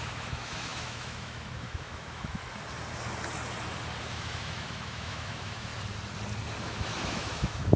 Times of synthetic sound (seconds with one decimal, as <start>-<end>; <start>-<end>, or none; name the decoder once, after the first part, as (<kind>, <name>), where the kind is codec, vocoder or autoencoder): 0.0-2.4 (autoencoder, DAC-VAE); 4.0-5.7; 6.6-7.8